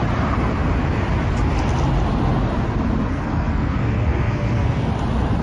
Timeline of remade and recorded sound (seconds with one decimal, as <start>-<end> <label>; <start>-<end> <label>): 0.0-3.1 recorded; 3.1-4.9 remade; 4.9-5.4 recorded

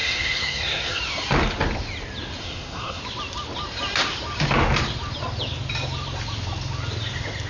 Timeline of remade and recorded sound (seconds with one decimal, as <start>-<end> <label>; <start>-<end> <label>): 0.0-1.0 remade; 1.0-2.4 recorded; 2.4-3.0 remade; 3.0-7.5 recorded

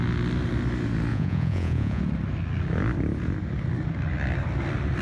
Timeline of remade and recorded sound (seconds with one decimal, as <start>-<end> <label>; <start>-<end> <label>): 0.0-1.1 recorded; 1.1-2.0 remade; 2.0-5.0 recorded

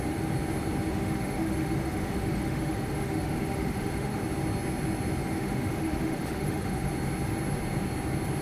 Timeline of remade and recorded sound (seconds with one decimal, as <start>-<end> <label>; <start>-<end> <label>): 0.0-0.9 recorded; 0.9-4.2 remade; 4.2-5.4 recorded; 5.4-6.9 remade; 6.9-8.4 recorded

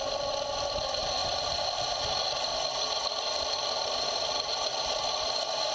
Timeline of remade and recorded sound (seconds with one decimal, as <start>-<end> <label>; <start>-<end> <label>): 0.0-5.7 recorded

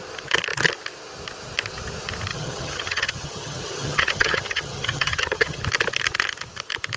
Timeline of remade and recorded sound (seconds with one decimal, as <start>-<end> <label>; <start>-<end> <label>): 0.0-2.3 recorded; 2.3-5.6 remade; 5.6-7.0 recorded

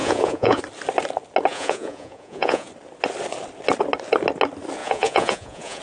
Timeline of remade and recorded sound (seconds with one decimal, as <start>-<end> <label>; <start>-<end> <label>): 0.0-0.6 remade; 0.6-1.5 recorded; 1.5-2.7 remade; 2.7-4.8 recorded; 4.8-5.8 remade

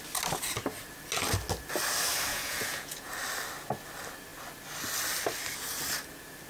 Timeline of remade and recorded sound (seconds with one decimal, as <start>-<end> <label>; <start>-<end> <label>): 0.0-2.3 recorded; 2.3-3.1 remade; 3.1-6.5 recorded